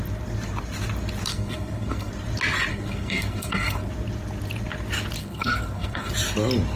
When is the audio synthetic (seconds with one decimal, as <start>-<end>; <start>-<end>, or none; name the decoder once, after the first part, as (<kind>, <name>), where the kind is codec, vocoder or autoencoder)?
1.3-2.1 (codec, SNAC); 2.7-3.9; 5.2-6.1